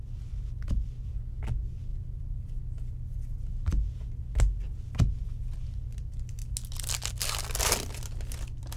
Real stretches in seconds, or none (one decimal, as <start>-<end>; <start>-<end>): 0.0-1.9; 2.6-8.8